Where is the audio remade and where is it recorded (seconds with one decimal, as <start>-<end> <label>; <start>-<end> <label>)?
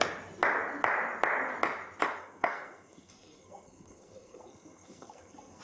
0.0-2.2 recorded; 2.2-5.6 remade